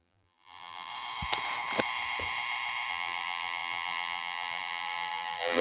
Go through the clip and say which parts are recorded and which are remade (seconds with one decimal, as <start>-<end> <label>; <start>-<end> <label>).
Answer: 0.0-0.9 remade; 0.9-2.9 recorded; 2.9-5.6 remade